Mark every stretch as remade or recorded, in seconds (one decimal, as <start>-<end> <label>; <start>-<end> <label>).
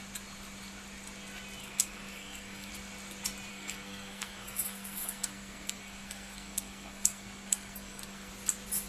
0.0-1.6 recorded; 1.6-2.7 remade; 2.7-3.5 recorded; 3.5-8.3 remade; 8.3-8.9 recorded